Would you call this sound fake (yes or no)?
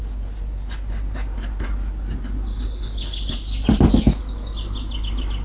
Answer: no